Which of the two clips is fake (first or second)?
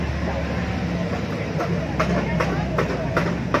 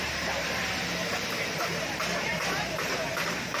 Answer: second